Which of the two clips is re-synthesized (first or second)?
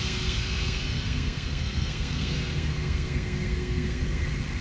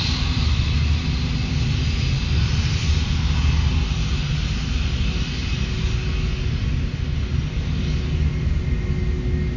first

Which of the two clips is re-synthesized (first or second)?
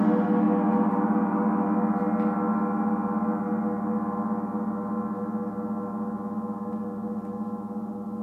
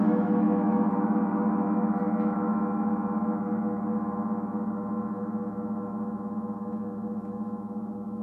second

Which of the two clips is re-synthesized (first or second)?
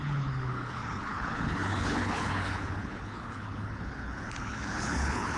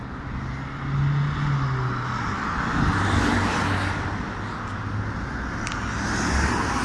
first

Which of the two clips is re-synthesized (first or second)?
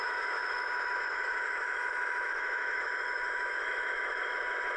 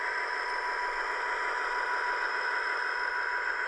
first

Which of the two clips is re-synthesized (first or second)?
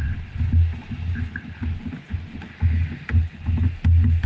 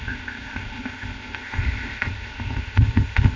second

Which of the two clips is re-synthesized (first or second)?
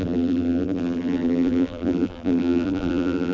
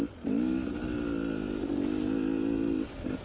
first